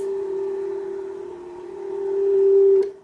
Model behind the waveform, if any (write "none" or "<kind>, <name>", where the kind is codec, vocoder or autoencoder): vocoder, BigVGAN v2